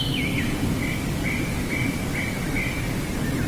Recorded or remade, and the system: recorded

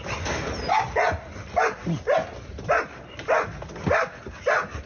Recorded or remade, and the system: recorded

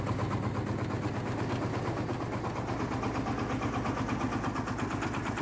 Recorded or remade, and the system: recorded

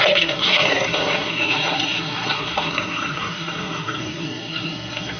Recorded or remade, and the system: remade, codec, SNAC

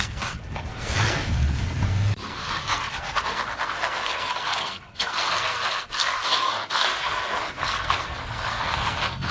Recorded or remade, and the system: remade, codec, SNAC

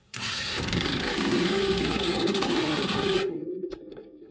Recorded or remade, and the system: remade, codec, SNAC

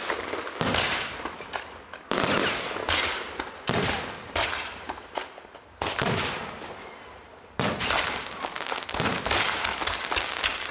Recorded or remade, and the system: recorded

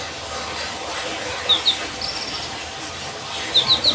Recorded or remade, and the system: recorded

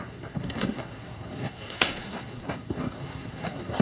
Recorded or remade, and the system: remade, codec, SNAC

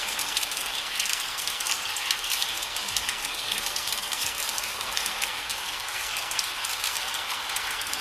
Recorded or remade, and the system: remade, codec, SNAC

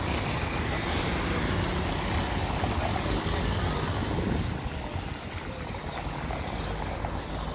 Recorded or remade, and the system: recorded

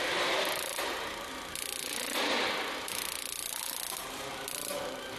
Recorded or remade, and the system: recorded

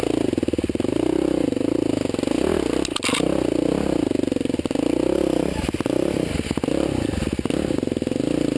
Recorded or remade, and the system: recorded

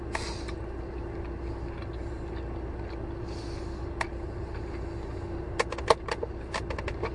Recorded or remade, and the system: recorded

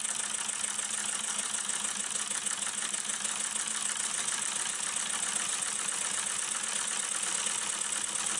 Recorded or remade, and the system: recorded